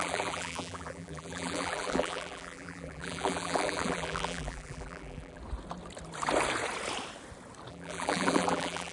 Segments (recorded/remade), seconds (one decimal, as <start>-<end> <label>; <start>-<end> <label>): 0.0-5.4 remade; 5.4-7.7 recorded; 7.7-8.9 remade